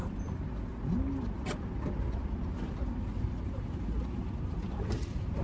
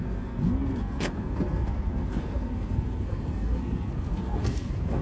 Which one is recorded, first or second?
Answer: first